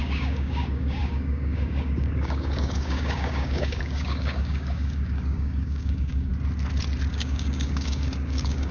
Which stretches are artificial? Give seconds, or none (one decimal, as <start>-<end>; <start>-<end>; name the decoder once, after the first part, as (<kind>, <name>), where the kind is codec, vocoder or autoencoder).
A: 0.0-6.3 (codec, DAC); 7.1-8.7